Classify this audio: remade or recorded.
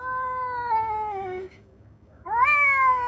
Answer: remade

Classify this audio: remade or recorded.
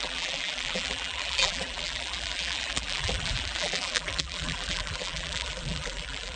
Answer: remade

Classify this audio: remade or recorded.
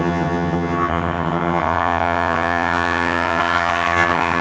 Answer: remade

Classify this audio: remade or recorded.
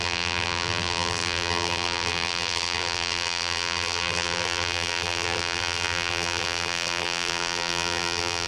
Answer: remade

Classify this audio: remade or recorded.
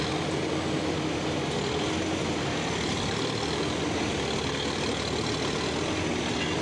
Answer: recorded